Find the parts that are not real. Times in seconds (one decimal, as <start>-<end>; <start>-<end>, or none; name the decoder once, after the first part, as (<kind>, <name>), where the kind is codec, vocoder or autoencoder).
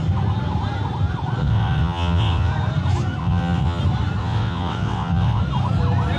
1.4-2.5 (vocoder, WaveNeXt); 3.2-3.8; 4.2-5.4